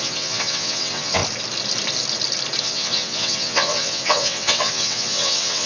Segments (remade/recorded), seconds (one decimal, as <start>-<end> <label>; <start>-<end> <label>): 0.0-1.2 remade; 1.2-2.6 recorded; 2.6-5.7 remade